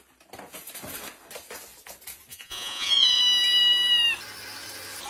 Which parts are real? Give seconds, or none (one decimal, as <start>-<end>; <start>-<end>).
0.0-2.3; 3.2-5.1